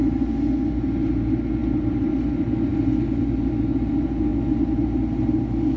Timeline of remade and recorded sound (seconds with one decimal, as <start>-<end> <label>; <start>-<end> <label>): 0.0-5.8 recorded